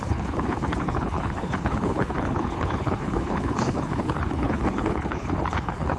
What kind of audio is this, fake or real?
fake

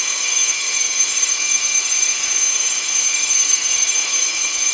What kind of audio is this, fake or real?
fake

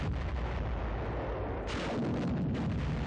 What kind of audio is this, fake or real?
real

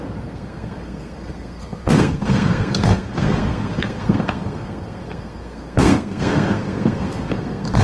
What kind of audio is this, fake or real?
fake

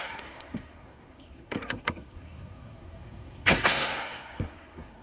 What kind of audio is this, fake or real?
fake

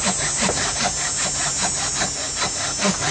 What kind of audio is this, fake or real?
real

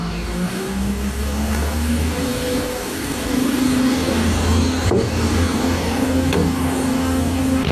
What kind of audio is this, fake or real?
fake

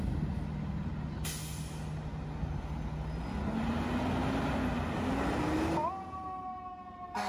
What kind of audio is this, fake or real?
real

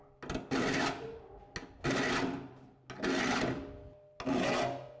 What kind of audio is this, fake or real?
real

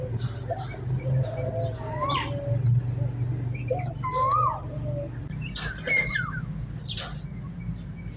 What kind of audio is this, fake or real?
real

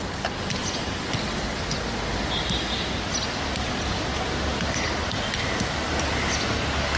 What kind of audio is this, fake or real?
real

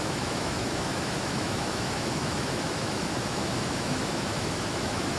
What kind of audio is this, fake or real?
fake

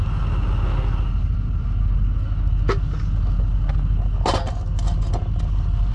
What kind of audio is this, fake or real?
real